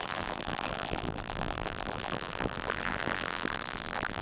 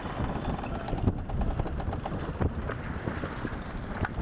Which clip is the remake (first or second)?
first